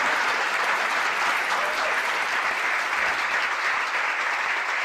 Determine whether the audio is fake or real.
real